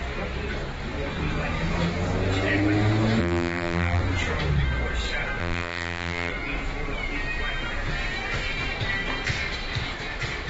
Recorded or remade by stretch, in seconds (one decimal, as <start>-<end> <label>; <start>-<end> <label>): 0.0-3.2 recorded; 3.2-4.0 remade; 4.0-5.4 recorded; 5.4-6.3 remade; 6.3-10.5 recorded